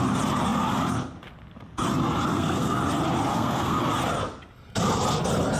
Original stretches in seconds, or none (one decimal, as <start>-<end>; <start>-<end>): 0.0-2.3; 2.8-3.3; 3.8-5.6